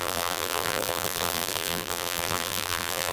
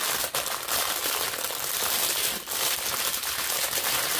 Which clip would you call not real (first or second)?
first